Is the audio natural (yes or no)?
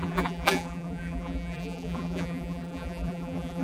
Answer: no